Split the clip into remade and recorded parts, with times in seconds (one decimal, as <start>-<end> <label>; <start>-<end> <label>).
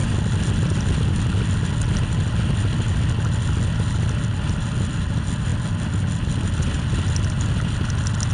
0.0-8.3 recorded